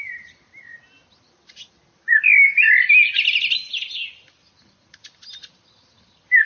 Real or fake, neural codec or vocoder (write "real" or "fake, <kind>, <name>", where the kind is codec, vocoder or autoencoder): real